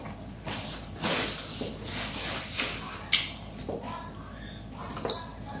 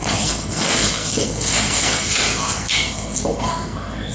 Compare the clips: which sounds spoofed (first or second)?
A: second